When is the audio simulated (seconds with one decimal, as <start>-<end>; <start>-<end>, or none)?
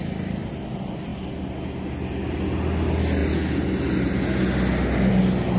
none